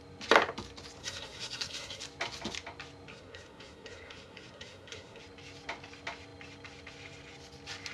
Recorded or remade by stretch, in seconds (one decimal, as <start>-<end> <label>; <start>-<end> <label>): 0.0-1.0 recorded; 1.0-2.0 remade; 2.0-3.1 recorded; 3.1-5.2 remade; 5.2-7.9 recorded